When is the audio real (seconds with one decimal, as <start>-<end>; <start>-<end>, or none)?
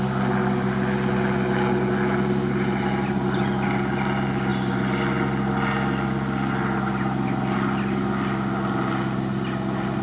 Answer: 0.0-10.0